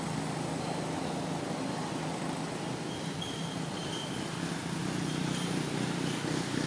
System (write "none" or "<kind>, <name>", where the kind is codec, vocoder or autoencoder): none